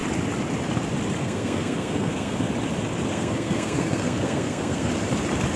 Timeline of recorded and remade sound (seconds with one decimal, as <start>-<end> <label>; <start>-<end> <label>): 0.0-1.2 recorded; 1.2-2.5 remade; 2.5-3.1 recorded; 3.1-4.9 remade; 4.9-5.6 recorded